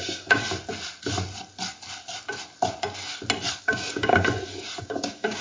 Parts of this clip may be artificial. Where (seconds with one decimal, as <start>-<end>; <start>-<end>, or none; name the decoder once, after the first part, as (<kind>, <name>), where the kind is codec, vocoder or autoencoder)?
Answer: 0.0-0.4 (codec, DAC); 3.6-4.1; 4.8-5.4